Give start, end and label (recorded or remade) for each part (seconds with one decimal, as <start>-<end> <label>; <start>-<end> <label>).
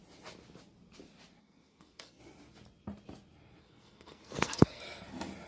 0.0-1.4 recorded; 1.4-2.2 remade; 2.2-3.6 recorded; 3.6-4.8 remade; 4.8-5.5 recorded